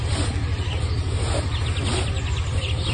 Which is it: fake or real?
real